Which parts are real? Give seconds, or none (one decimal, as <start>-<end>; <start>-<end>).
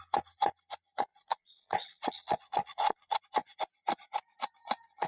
0.0-1.1; 3.2-5.1